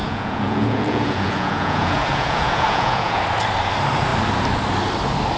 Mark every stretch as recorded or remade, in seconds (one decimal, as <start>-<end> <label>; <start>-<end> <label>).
0.0-3.2 remade; 3.2-5.4 recorded